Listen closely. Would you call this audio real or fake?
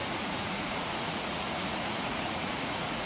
fake